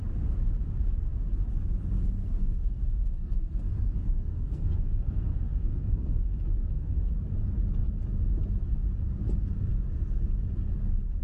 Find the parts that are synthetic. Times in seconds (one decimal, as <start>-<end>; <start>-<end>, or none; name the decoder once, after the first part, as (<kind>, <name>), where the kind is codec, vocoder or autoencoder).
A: 2.2-7.1 (codec, SNAC)